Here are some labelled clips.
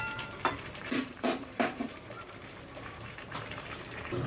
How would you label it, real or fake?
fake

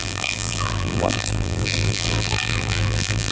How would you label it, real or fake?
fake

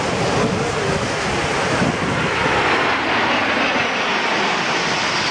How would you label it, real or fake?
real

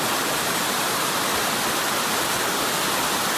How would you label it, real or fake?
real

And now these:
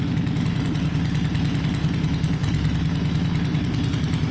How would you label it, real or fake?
real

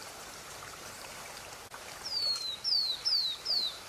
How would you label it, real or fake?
fake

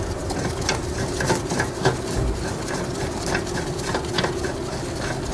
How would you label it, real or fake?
real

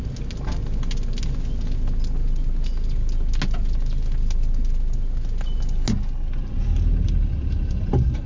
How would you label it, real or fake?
real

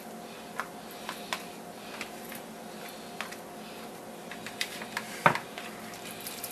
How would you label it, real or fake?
fake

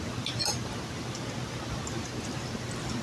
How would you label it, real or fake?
real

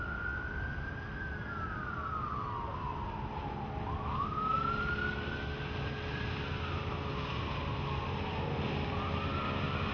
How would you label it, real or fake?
real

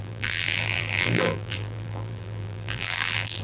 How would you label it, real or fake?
fake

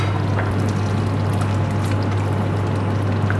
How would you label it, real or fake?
real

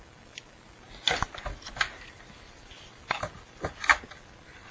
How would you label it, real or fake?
real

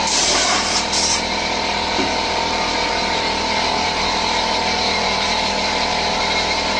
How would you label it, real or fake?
fake